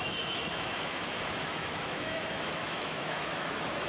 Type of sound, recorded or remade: remade